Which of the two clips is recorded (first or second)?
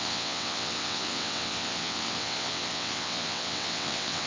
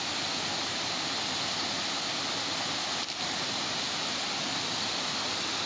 second